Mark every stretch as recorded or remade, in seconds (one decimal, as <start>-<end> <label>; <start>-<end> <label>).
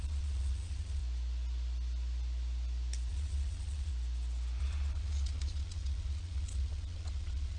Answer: 0.0-1.0 remade; 1.0-3.1 recorded; 3.1-3.9 remade; 3.9-4.6 recorded; 4.6-7.6 remade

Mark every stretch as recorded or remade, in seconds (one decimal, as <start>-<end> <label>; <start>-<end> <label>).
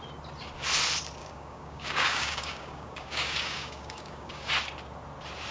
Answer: 0.0-1.2 recorded; 1.2-4.5 remade; 4.5-5.5 recorded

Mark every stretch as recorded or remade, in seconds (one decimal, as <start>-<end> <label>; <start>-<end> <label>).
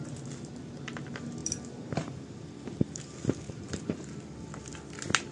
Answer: 0.0-1.4 recorded; 1.4-4.6 remade; 4.6-5.3 recorded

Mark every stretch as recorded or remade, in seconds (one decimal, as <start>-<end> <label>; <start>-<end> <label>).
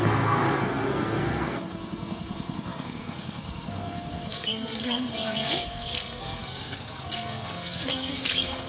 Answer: 0.0-8.7 remade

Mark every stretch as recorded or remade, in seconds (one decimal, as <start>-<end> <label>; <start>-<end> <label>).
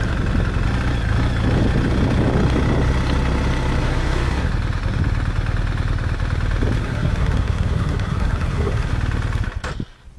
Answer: 0.0-3.8 recorded; 3.8-4.5 remade; 4.5-6.8 recorded; 6.8-8.9 remade; 8.9-10.2 recorded